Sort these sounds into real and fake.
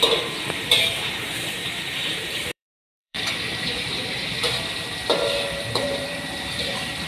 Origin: fake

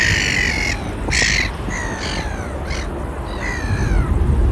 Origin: real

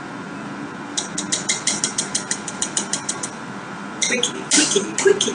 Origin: real